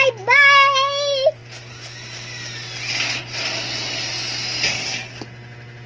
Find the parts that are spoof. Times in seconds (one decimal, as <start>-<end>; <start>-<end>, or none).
none